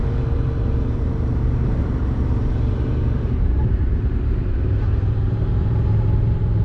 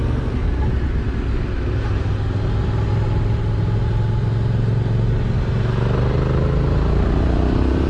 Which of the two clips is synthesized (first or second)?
first